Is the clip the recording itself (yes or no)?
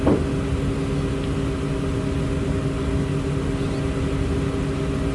yes